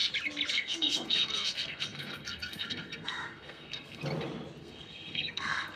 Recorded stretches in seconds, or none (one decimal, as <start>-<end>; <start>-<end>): 0.0-0.5; 4.0-4.6